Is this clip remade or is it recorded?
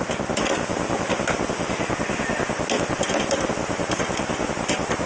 recorded